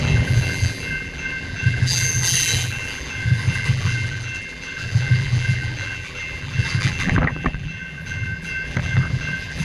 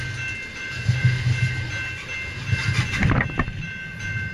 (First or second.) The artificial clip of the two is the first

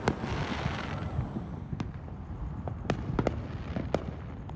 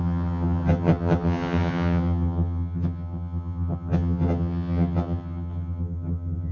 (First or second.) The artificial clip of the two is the second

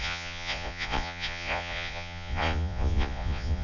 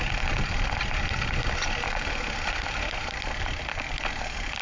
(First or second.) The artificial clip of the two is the first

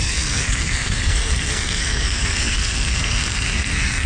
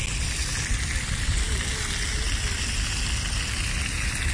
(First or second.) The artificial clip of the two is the first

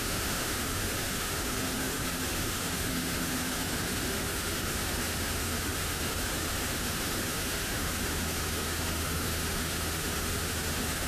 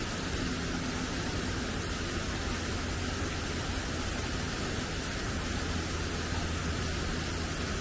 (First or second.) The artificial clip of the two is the first